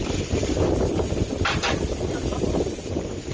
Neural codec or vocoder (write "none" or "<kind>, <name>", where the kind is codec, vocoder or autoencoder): none